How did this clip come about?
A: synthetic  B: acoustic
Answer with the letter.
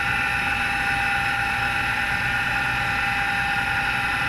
B